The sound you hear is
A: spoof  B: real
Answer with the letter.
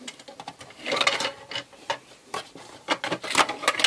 B